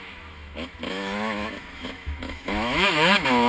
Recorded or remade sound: remade